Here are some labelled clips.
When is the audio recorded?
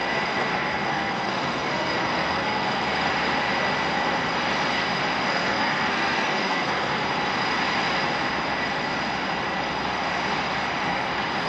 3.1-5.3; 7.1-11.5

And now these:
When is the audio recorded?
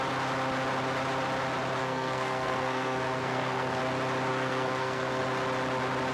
0.0-1.8; 3.8-4.3; 5.2-6.1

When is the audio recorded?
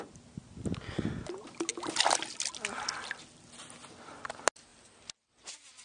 0.0-5.8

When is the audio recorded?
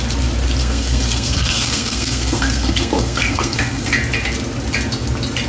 0.0-0.6; 3.9-5.5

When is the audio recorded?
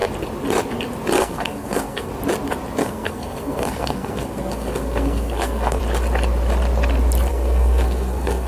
0.0-1.2; 2.1-2.8; 5.8-7.3